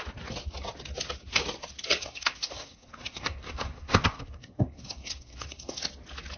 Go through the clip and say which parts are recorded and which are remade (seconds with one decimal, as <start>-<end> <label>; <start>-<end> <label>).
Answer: 0.0-2.0 recorded; 2.0-5.8 remade; 5.8-6.4 recorded